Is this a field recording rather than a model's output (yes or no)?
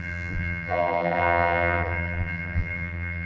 no